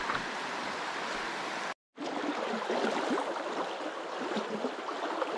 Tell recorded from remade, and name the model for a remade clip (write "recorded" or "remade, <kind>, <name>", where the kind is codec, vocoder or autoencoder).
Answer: recorded